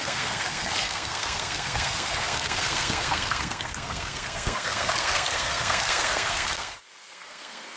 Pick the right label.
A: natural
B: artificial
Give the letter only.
B